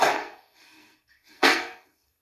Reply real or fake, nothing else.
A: fake